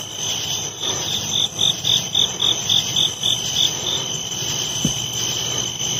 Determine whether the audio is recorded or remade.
recorded